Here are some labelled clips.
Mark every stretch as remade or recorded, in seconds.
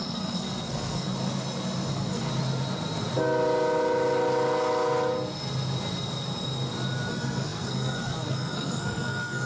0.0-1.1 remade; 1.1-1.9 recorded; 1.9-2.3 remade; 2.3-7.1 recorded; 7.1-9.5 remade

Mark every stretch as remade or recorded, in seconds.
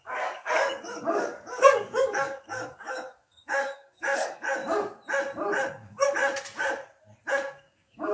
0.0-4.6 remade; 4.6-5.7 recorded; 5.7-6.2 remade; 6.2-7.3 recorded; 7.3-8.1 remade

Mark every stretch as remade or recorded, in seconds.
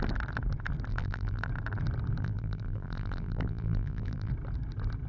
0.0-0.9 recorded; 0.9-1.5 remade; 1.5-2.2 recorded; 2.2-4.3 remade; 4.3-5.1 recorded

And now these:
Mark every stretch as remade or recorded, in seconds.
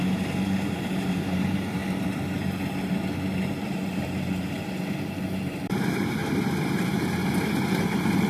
0.0-1.8 remade; 1.8-3.4 recorded; 3.4-8.3 remade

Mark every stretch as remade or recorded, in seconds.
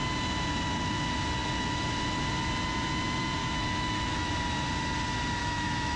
0.0-3.4 recorded; 3.4-4.3 remade; 4.3-5.4 recorded; 5.4-6.0 remade